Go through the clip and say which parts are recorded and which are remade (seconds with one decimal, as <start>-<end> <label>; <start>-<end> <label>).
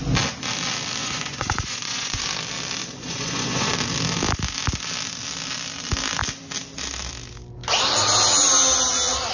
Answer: 0.0-1.0 recorded; 1.0-2.2 remade; 2.2-2.8 recorded; 2.8-3.7 remade; 3.7-9.3 recorded